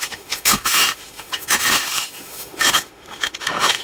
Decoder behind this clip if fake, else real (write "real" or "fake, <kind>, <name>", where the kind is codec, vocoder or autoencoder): fake, autoencoder, DAC-VAE